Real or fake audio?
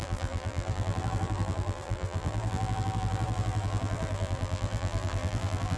fake